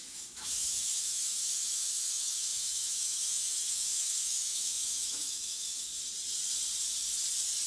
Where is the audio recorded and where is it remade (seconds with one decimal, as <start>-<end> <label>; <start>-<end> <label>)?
0.0-5.9 remade; 5.9-7.7 recorded